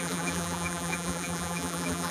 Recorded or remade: remade